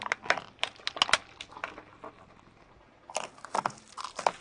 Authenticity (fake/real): real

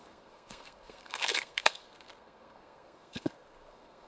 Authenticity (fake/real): fake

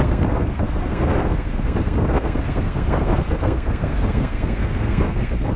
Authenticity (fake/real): fake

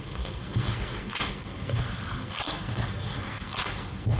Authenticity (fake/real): fake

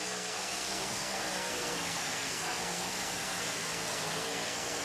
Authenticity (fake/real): fake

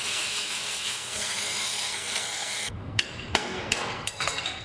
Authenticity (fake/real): fake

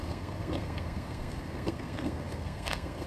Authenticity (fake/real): fake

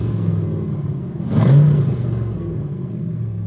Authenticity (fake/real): fake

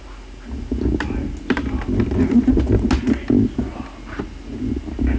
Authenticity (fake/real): real